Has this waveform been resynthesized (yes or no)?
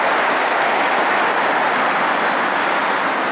no